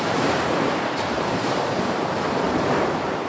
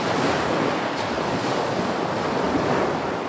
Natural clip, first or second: second